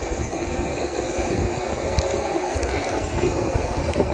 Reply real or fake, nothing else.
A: fake